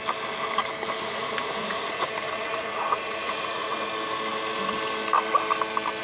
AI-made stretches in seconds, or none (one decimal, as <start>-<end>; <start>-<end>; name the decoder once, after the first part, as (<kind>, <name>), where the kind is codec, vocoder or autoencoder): 1.0-3.9 (vocoder, Vocos)